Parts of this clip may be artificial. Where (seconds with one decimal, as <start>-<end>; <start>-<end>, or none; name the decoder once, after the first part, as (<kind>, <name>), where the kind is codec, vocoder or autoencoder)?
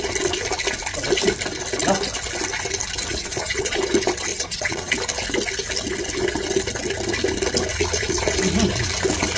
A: 3.1-3.8 (vocoder, Vocos); 4.3-4.9; 7.7-8.4